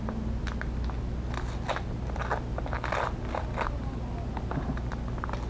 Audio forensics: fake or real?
real